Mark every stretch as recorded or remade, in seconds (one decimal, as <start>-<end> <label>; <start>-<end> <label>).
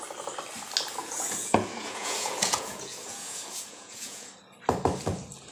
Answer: 0.0-1.0 recorded; 1.0-4.3 remade; 4.3-5.5 recorded